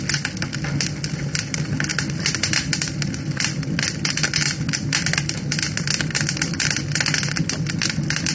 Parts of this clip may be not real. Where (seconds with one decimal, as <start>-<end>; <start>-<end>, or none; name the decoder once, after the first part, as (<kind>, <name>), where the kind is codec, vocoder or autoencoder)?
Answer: none